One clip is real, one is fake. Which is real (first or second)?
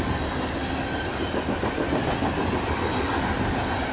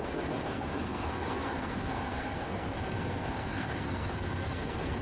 first